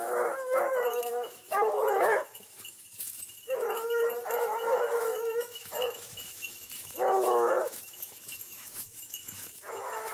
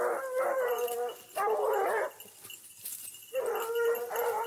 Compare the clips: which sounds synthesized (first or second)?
first